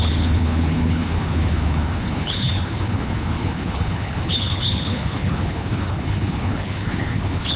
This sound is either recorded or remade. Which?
remade